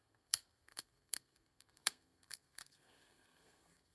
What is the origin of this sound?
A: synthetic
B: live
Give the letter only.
A